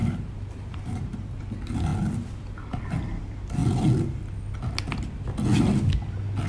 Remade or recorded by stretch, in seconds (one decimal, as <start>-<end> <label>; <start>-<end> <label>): 0.0-1.4 remade; 1.4-6.5 recorded